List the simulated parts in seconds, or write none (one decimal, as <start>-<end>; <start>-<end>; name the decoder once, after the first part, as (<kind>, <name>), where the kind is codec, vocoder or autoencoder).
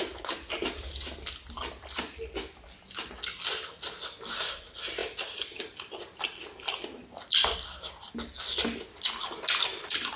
none